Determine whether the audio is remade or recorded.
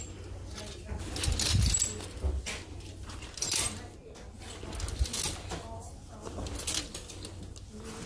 recorded